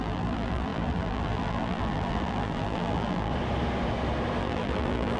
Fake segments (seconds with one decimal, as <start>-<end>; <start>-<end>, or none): 0.0-3.3; 4.4-5.2